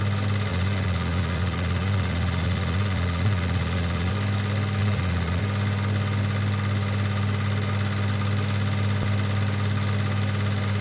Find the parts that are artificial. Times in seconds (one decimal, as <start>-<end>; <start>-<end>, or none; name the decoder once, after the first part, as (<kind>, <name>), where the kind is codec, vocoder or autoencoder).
0.5-4.1 (vocoder, Vocos); 4.8-5.4